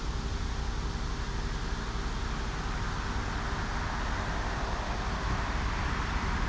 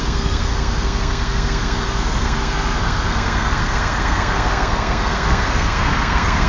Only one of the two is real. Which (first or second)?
first